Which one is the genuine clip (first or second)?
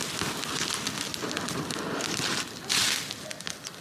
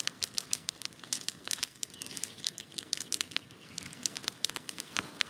first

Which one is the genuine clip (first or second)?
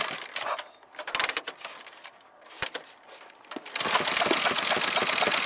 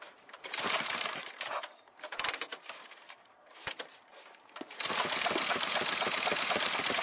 first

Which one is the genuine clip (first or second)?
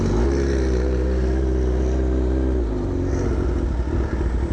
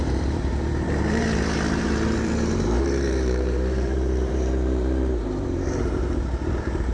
first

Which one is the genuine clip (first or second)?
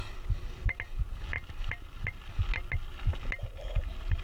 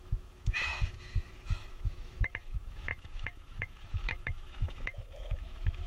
first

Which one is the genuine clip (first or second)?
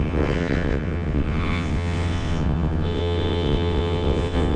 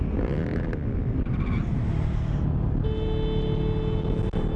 second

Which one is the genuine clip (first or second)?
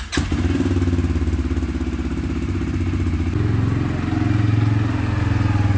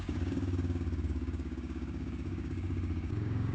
first